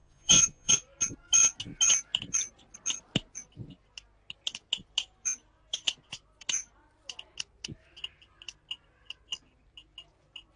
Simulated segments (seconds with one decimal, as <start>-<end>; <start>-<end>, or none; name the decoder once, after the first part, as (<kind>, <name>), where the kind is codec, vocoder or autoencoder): 0.0-0.7 (vocoder, Vocos)